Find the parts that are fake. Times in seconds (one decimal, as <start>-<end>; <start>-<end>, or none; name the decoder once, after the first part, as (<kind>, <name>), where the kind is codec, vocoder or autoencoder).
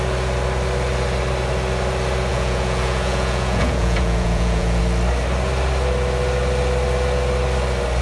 2.3-4.8 (vocoder, Vocos)